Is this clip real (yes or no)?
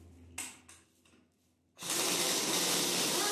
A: yes